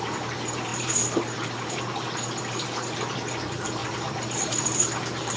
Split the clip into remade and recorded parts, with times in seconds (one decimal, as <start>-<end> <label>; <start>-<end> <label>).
0.0-0.7 recorded; 0.7-1.8 remade; 1.8-3.8 recorded; 3.8-5.4 remade